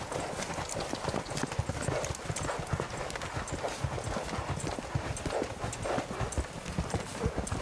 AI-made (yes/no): no